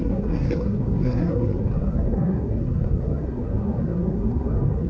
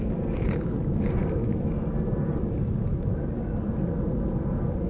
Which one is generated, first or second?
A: first